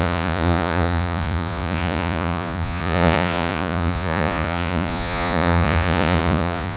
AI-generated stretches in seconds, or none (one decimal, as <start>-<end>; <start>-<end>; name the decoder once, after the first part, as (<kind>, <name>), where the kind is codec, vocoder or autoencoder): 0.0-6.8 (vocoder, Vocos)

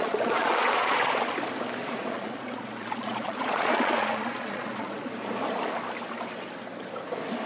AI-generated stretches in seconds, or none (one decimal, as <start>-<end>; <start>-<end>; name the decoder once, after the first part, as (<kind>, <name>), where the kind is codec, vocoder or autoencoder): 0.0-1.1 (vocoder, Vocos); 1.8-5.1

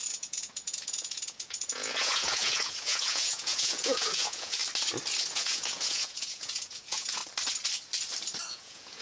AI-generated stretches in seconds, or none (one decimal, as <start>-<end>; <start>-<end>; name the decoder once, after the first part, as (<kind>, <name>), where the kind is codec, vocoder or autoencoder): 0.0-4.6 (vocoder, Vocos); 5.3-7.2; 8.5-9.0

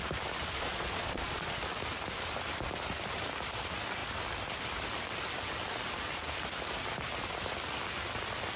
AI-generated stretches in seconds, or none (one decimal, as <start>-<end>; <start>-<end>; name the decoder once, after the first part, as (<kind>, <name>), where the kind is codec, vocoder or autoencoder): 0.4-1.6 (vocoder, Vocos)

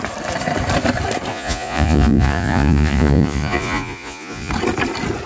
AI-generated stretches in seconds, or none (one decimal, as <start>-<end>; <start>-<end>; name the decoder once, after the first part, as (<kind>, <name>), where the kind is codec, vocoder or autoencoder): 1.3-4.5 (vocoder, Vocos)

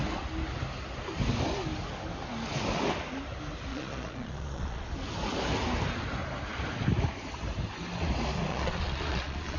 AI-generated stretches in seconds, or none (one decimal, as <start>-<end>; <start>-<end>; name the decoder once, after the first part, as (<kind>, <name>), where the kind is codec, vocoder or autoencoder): 3.7-4.9 (vocoder, Vocos); 8.5-9.6

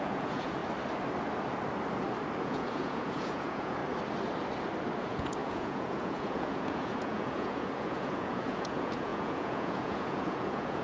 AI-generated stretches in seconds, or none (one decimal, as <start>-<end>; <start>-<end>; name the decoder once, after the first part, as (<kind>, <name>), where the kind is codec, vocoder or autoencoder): 0.0-0.6 (vocoder, Vocos); 2.4-3.8; 5.0-10.8

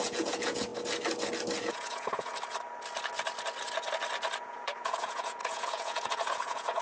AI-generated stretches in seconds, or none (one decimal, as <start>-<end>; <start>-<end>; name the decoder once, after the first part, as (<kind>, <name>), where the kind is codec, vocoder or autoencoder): 0.0-0.7 (vocoder, Vocos); 1.6-2.3; 4.4-6.8